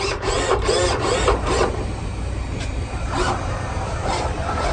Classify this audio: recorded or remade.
remade